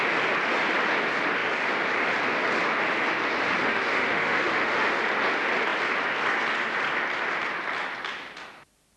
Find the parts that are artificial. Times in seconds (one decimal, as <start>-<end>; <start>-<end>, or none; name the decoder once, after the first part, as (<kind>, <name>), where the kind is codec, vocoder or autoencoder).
3.6-5.0 (autoencoder, DAC-VAE)